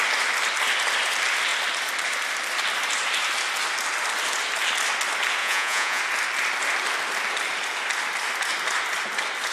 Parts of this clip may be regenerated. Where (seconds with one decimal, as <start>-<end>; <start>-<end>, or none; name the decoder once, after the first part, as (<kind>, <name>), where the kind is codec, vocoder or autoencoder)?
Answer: 5.4-6.0 (vocoder, Vocos)